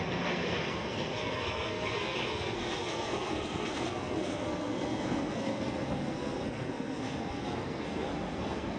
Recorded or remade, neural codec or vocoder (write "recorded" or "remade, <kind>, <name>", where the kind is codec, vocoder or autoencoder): remade, codec, SNAC